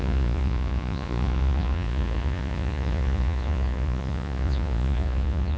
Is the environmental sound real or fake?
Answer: fake